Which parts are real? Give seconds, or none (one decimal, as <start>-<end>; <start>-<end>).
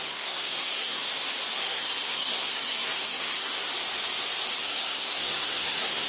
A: 1.0-1.5; 3.7-4.6